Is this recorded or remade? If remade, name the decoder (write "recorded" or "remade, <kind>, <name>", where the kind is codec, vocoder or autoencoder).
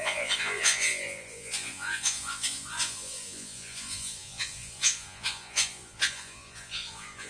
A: remade, vocoder, Vocos